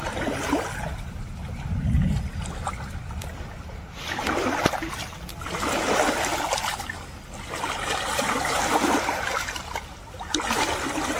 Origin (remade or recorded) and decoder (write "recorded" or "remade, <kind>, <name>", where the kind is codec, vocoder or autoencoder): recorded